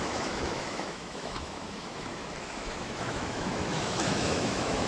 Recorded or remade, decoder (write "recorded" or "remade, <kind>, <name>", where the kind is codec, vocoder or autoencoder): remade, autoencoder, DAC-VAE